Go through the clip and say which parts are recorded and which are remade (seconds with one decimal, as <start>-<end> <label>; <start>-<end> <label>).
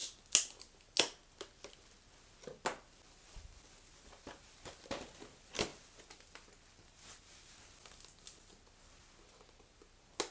0.0-10.3 recorded